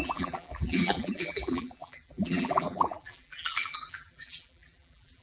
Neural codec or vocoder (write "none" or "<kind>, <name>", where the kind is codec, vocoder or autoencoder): vocoder, BigVGAN v2